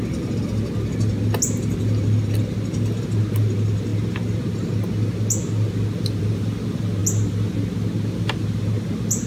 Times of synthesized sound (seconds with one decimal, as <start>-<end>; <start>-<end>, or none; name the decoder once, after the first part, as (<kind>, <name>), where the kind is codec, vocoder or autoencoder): none